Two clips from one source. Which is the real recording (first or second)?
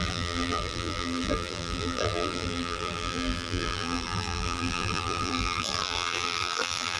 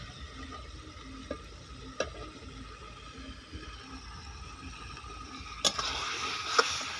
second